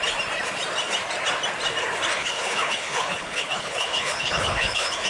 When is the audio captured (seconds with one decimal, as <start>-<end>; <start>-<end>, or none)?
0.0-2.1